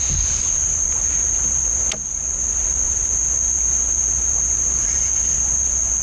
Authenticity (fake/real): real